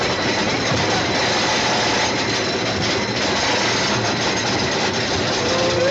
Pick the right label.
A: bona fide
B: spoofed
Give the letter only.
A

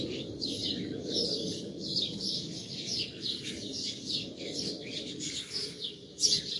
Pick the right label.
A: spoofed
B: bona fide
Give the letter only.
A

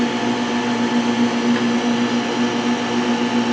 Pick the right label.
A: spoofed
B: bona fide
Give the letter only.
B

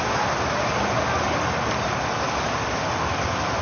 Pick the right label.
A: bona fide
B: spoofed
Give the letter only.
A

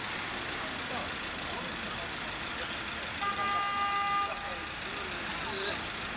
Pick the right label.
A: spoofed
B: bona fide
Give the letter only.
B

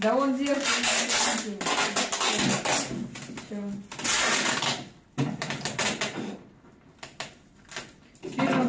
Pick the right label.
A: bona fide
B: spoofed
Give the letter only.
A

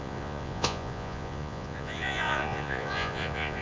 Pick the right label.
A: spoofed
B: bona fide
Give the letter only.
A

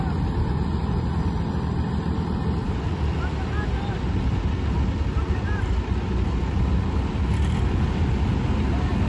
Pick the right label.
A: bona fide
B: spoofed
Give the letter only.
A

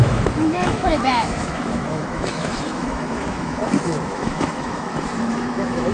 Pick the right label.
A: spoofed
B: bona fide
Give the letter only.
A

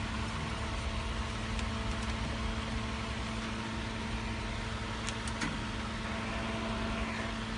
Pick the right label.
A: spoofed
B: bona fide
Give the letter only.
B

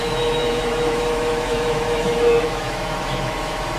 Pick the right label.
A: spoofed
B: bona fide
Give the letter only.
A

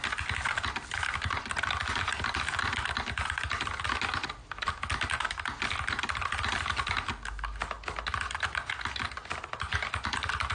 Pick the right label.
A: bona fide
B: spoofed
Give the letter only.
A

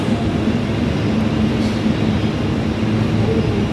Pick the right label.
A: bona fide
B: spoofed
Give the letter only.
A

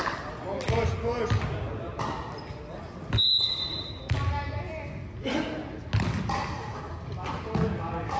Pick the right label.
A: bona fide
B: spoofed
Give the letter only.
A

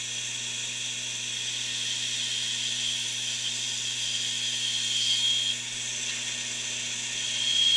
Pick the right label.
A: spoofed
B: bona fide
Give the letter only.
B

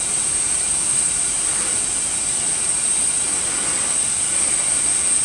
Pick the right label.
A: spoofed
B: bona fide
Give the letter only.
B